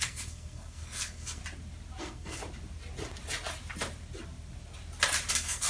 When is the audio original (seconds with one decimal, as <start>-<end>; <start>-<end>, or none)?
1.4-2.0; 2.4-5.3